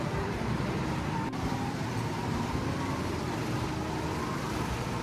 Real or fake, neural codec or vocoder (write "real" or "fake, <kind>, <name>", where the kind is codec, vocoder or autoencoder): fake, vocoder, BigVGAN v2